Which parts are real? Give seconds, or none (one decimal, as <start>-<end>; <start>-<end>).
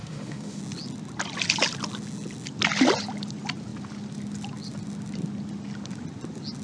0.6-6.6